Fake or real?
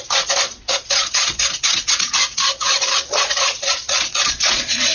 fake